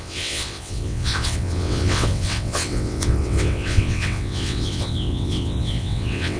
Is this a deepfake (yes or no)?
yes